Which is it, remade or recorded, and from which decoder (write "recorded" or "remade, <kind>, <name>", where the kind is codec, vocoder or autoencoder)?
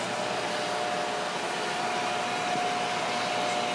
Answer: recorded